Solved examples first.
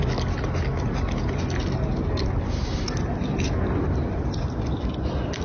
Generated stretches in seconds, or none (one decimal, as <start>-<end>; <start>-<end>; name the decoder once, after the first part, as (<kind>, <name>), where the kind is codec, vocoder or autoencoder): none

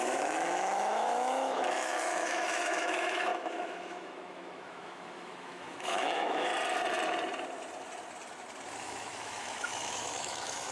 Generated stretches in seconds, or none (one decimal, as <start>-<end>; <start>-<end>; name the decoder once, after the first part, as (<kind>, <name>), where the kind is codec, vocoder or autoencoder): 0.0-6.5 (autoencoder, DAC-VAE); 8.8-10.7

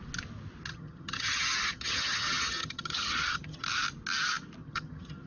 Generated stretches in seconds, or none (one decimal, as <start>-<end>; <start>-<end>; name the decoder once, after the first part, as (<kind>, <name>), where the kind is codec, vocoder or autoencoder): 0.7-3.6 (vocoder, HiFi-GAN); 4.6-5.3

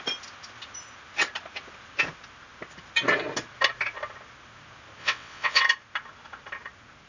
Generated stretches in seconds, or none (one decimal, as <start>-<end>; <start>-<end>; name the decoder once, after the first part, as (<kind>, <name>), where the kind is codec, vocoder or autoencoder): 5.0-5.6 (vocoder, WaveNeXt)

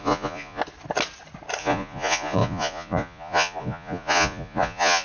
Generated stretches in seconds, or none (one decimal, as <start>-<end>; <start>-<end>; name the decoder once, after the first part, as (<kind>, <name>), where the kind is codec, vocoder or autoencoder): 0.0-0.6 (vocoder, Vocos); 1.6-5.0

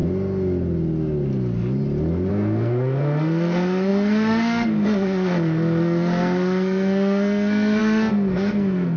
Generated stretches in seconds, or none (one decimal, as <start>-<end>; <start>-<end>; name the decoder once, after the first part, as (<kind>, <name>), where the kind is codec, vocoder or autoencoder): 2.3-9.0 (codec, SNAC)